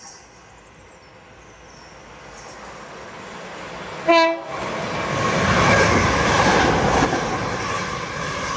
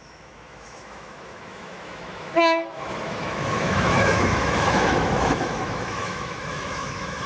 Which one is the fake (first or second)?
second